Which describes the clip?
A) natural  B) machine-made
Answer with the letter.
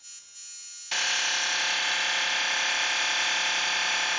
A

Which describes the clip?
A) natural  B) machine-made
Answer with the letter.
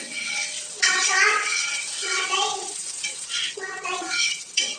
B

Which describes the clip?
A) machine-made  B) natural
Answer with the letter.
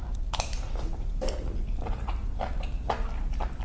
B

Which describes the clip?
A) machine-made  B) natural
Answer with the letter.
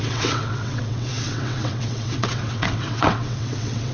A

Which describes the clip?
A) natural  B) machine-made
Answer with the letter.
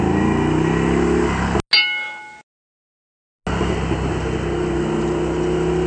A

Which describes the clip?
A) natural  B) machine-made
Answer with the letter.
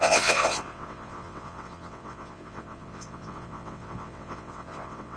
B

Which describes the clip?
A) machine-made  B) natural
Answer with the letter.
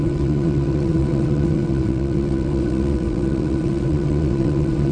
A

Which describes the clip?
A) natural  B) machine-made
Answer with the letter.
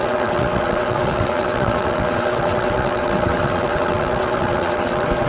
B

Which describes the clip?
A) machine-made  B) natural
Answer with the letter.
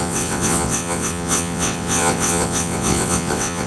A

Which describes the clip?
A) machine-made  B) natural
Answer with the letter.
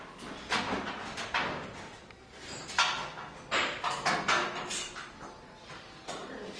B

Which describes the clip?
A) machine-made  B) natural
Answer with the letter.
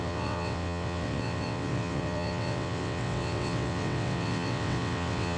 A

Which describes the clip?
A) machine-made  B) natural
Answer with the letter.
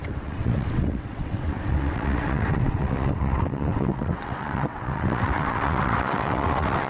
A